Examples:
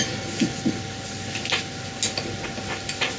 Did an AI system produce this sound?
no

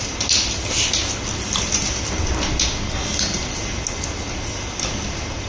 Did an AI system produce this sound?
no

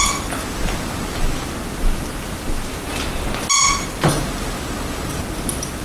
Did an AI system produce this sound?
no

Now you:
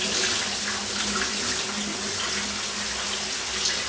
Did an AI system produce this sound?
no